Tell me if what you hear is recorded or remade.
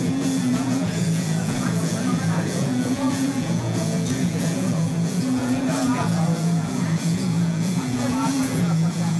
remade